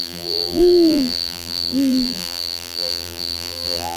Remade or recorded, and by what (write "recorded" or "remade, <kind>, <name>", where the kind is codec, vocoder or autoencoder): remade, vocoder, BigVGAN v2